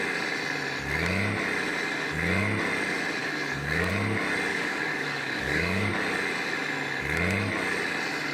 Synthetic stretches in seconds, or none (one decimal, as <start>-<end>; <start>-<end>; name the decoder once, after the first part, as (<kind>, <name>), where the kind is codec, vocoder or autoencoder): 3.2-3.9 (codec, DAC); 4.5-5.9